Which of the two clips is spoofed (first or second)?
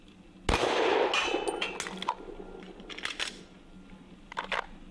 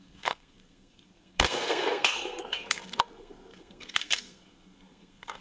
second